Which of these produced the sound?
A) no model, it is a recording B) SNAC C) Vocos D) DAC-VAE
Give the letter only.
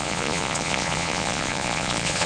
C